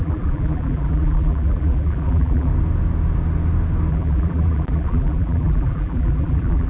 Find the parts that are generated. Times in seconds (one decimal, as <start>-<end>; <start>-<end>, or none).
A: 0.0-2.5; 3.9-6.7